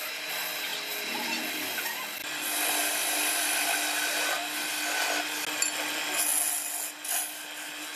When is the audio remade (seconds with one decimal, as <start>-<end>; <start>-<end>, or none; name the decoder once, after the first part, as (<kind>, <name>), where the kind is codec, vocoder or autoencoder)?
none